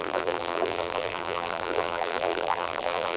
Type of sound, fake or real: fake